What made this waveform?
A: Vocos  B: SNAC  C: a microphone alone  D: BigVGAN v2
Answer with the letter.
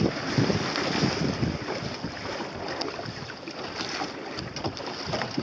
C